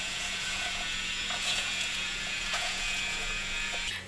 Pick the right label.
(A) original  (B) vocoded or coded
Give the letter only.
B